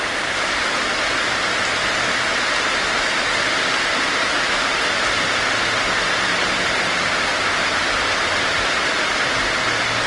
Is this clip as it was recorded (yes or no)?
yes